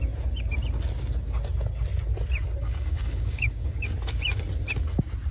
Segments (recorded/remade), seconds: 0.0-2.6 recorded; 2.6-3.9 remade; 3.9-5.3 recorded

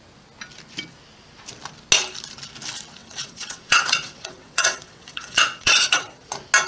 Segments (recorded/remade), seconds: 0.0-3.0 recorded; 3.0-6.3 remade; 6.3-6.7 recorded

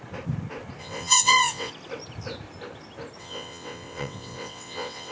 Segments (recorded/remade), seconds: 0.0-0.8 recorded; 0.8-1.7 remade; 1.7-3.2 recorded; 3.2-5.1 remade